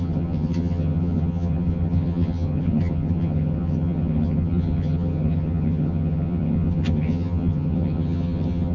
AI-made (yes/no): yes